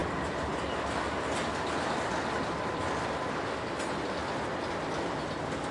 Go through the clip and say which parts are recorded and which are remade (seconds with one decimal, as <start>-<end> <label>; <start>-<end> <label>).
0.0-5.7 recorded